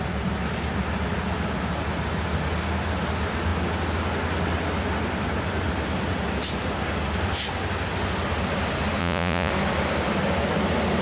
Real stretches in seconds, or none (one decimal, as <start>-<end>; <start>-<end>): 0.0-9.0; 9.5-11.0